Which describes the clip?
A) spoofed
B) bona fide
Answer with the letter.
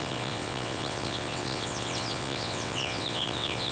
A